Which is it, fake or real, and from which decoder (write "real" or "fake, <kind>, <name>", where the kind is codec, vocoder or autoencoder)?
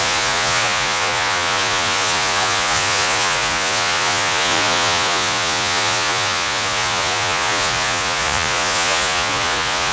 fake, vocoder, Vocos